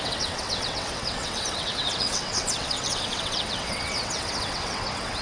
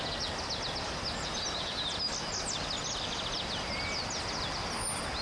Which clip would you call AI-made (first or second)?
first